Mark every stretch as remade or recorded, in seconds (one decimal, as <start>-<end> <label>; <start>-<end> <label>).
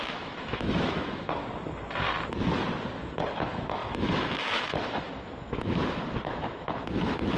0.0-1.4 remade; 1.4-3.3 recorded; 3.3-7.4 remade